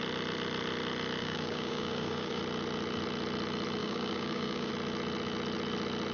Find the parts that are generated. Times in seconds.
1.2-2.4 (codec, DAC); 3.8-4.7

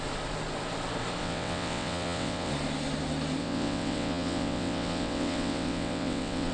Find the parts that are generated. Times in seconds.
1.2-2.5 (vocoder, WaveNeXt); 3.4-6.5

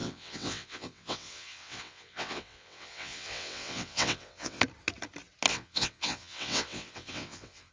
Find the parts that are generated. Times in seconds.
0.0-4.6 (vocoder, WaveNeXt); 5.5-7.7

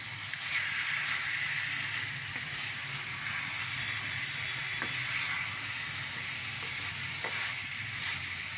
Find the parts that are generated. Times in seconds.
2.3-3.2 (codec, DAC); 6.4-7.5